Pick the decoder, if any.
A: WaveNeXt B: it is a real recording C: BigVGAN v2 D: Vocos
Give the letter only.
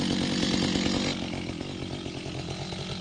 B